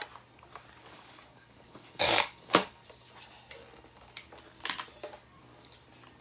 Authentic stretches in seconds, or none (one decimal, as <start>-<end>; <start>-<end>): 0.0-0.8; 2.8-6.2